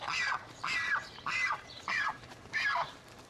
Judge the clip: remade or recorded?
remade